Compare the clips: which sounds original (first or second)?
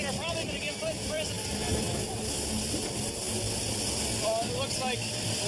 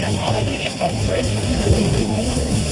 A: first